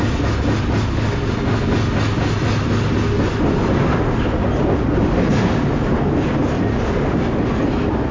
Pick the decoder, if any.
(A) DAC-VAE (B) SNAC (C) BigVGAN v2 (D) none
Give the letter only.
D